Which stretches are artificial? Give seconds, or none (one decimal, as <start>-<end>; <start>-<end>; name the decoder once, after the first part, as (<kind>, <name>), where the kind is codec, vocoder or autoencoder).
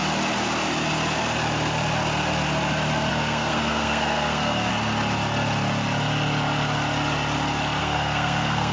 3.1-4.7 (codec, SNAC); 7.8-8.7